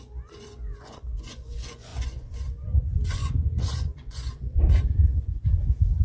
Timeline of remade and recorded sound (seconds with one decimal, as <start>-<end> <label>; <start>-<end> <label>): 0.0-6.0 remade